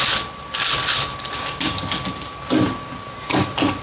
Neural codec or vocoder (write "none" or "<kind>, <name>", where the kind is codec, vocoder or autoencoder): none